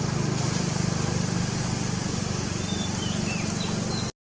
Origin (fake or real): real